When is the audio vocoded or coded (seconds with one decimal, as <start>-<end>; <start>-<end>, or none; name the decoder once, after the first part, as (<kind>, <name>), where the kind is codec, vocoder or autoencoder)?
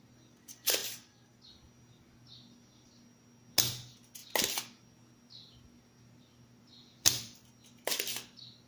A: 6.8-7.5 (vocoder, BigVGAN v2)